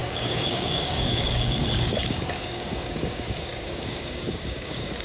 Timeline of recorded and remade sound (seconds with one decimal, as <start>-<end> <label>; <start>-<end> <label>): 0.0-5.0 remade